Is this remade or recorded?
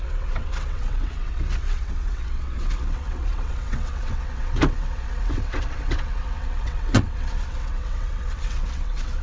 remade